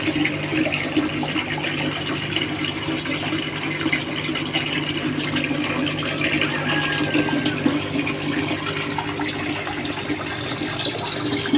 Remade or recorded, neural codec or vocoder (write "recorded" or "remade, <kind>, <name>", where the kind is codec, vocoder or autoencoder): recorded